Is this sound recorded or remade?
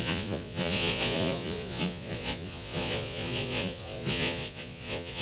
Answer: remade